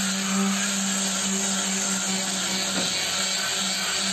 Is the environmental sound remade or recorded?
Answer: recorded